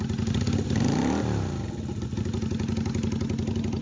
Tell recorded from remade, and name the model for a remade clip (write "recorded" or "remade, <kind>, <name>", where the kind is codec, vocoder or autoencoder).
recorded